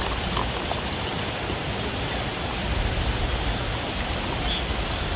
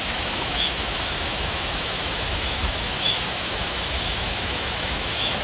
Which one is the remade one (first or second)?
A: second